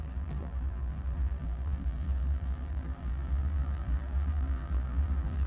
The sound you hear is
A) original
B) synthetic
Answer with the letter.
B